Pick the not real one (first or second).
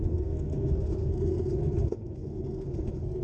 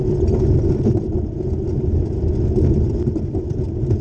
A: first